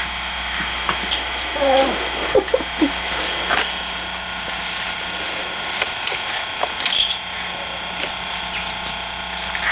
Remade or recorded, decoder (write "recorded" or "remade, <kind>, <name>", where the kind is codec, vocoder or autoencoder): recorded